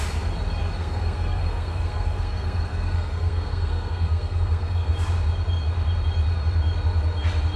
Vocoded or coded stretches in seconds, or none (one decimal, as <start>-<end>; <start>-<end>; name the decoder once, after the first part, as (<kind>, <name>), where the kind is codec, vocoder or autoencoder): 0.8-4.9 (codec, SNAC)